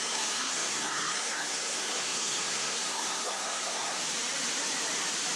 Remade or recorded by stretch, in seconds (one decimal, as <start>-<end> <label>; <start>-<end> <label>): 0.0-4.0 remade; 4.0-5.4 recorded